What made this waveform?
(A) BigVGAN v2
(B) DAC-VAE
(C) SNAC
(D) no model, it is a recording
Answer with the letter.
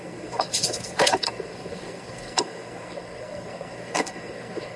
C